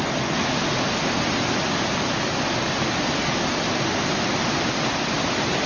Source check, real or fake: real